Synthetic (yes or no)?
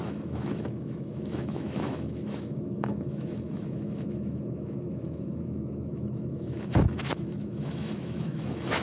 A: yes